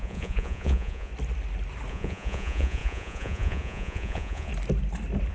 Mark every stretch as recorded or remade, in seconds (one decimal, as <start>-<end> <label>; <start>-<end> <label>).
0.0-1.1 remade; 1.1-1.9 recorded; 1.9-4.5 remade; 4.5-5.3 recorded